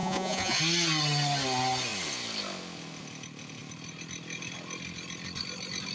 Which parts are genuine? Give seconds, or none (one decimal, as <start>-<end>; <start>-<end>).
0.6-5.9